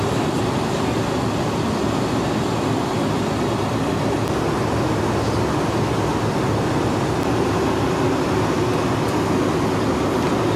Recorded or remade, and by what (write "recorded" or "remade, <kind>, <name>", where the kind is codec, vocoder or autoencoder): recorded